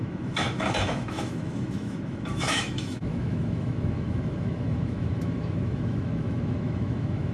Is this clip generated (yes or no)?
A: yes